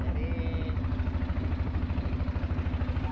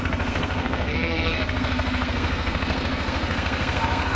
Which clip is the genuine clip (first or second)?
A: first